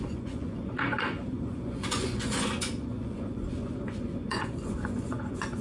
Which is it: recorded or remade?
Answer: remade